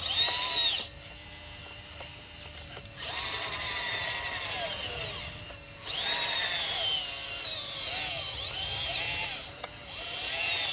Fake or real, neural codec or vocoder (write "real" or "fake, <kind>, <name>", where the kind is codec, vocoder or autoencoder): real